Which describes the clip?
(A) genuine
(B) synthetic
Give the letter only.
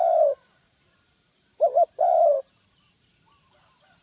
B